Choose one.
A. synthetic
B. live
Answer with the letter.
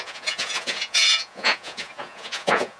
A